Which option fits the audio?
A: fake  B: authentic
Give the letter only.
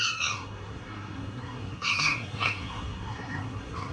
A